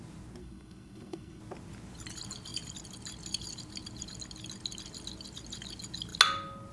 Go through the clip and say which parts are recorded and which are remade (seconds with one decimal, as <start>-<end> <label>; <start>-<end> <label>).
0.0-0.4 recorded; 0.4-1.4 remade; 1.4-6.7 recorded